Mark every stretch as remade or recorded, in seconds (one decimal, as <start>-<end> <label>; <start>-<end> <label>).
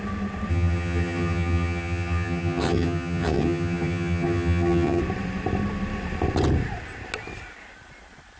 0.0-0.5 recorded; 0.5-5.0 remade; 5.0-8.4 recorded